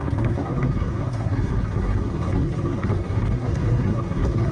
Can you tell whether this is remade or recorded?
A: remade